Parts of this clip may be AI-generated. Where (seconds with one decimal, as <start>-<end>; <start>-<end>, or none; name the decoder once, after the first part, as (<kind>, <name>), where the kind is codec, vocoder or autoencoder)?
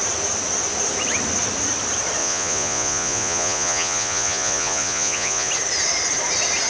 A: 2.2-5.5 (vocoder, Vocos)